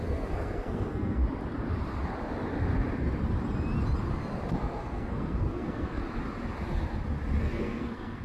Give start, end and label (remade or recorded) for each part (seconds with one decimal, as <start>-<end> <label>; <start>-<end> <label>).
0.0-1.2 remade; 1.2-4.5 recorded; 4.5-6.0 remade; 6.0-7.4 recorded; 7.4-8.2 remade